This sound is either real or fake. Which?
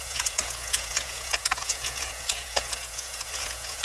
fake